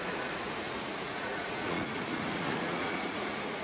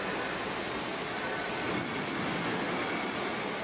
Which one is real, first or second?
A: second